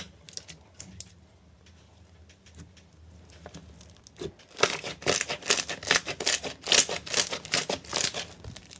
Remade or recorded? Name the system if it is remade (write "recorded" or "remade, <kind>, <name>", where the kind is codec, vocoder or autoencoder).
recorded